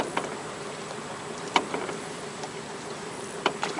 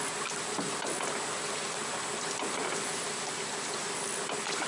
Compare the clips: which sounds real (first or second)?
second